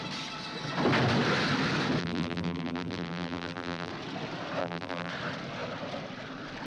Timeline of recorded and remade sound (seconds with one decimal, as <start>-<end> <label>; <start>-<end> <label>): 0.0-2.0 recorded; 2.0-3.9 remade; 3.9-4.6 recorded; 4.6-5.1 remade; 5.1-6.7 recorded